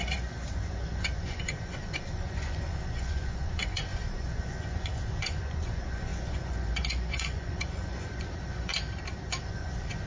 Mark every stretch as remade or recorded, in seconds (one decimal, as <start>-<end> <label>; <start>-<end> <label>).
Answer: 0.0-8.7 remade; 8.7-9.4 recorded; 9.4-10.1 remade